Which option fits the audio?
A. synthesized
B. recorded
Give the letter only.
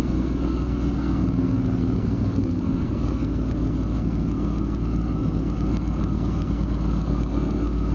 A